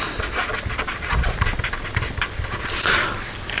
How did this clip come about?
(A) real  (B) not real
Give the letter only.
A